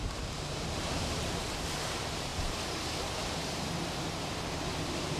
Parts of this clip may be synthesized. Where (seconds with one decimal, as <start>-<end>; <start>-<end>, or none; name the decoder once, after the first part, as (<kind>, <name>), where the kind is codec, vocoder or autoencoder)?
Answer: 2.3-3.7 (vocoder, BigVGAN v2)